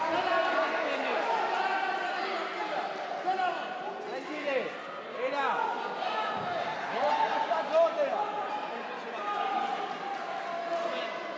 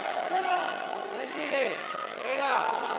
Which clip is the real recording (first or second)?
first